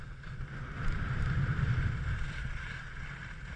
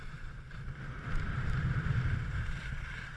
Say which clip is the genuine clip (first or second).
first